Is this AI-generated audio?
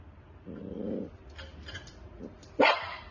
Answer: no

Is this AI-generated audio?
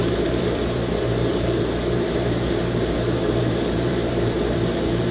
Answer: yes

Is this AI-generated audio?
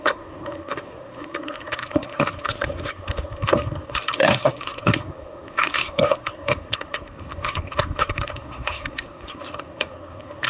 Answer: yes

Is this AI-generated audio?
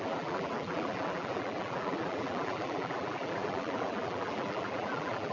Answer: yes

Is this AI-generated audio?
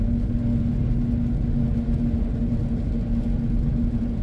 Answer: no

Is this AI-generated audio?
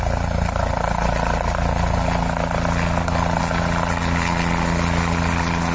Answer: no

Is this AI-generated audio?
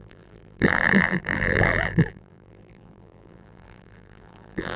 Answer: yes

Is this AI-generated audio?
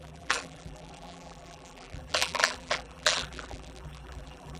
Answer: yes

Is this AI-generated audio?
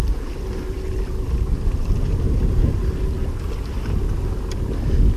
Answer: no